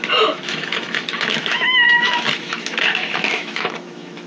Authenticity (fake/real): fake